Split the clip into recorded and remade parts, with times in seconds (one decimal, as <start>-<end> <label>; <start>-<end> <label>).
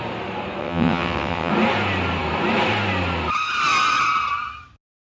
0.0-0.6 recorded; 0.6-1.5 remade; 1.5-5.0 recorded